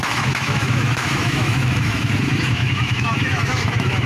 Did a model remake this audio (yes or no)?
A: yes